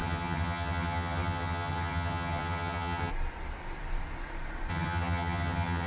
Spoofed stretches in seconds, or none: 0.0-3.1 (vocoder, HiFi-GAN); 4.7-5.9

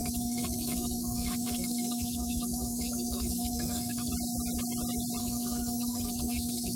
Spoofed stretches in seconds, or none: 0.0-4.1 (codec, SNAC); 5.2-6.8

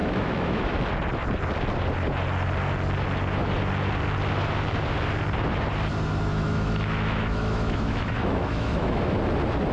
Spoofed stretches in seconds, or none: 0.0-0.8 (autoencoder, DAC-VAE); 6.3-9.2

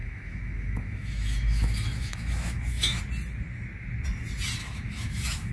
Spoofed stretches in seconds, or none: 0.0-3.0 (autoencoder, DAC-VAE); 4.6-5.5